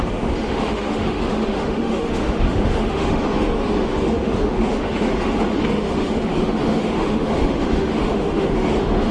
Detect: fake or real fake